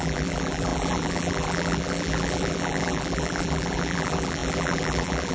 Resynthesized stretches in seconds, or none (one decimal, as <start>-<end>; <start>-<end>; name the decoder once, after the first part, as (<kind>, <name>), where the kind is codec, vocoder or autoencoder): 0.0-5.3 (vocoder, BigVGAN v2)